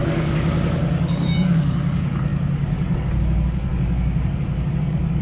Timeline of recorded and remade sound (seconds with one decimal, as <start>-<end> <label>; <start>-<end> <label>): 0.0-5.2 remade